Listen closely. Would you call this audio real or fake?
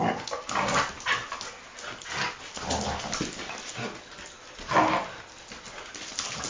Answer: real